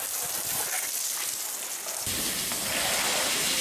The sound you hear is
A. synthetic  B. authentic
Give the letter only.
B